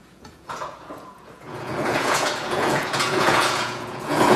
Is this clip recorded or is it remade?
remade